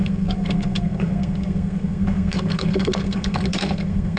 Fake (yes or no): yes